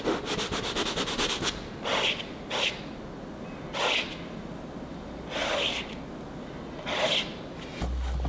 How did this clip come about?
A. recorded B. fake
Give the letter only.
A